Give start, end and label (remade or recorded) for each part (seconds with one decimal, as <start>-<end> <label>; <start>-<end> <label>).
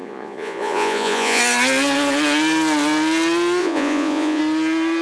0.0-1.4 remade; 1.4-3.6 recorded; 3.6-4.4 remade; 4.4-5.0 recorded